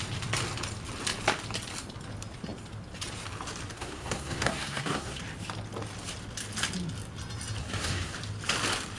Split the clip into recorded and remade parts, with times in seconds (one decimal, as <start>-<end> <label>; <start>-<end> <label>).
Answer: 0.0-3.7 recorded; 3.7-5.2 remade; 5.2-7.6 recorded; 7.6-8.1 remade; 8.1-9.0 recorded